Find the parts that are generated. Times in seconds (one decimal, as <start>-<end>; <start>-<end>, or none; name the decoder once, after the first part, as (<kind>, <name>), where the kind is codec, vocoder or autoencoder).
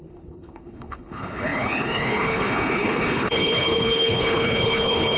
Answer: 0.0-5.2 (codec, HILCodec)